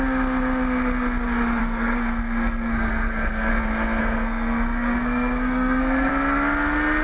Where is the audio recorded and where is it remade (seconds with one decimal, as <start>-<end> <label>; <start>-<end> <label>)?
0.0-1.6 recorded; 1.6-3.5 remade; 3.5-4.0 recorded; 4.0-6.1 remade; 6.1-7.0 recorded